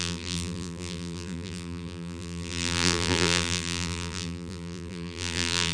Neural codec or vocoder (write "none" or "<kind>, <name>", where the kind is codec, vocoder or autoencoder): vocoder, BigVGAN v2